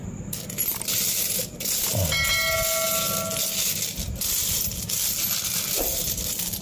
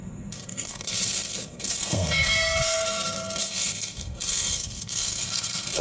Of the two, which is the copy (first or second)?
second